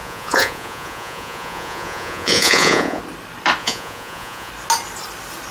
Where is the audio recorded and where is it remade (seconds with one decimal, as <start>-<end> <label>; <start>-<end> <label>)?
0.0-3.0 remade; 3.0-3.6 recorded; 3.6-4.5 remade; 4.5-5.5 recorded